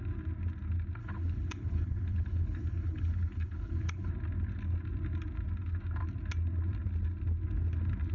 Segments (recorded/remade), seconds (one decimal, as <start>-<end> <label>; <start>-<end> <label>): 0.0-1.0 recorded; 1.0-4.1 remade; 4.1-8.1 recorded